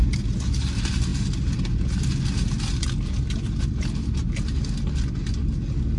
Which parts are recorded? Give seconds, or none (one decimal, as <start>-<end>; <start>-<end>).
0.0-6.0